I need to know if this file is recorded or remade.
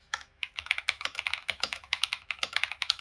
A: remade